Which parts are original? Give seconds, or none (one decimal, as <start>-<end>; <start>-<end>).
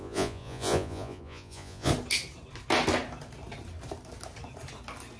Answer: 1.9-5.2